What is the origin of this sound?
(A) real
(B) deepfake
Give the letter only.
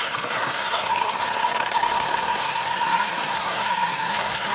B